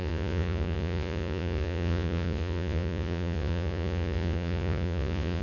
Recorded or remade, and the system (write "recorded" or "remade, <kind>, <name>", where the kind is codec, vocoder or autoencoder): remade, vocoder, Vocos